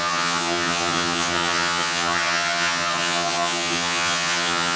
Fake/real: fake